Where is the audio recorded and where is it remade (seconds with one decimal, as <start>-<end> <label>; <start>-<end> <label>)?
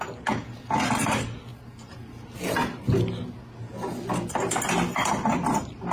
0.0-5.9 recorded